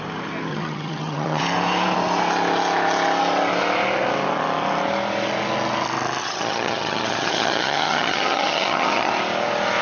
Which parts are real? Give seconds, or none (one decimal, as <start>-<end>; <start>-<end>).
0.0-0.5; 1.4-6.2; 9.1-9.8